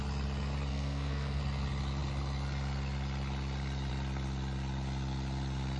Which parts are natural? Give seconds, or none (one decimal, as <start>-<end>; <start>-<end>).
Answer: 0.0-0.7; 1.4-5.8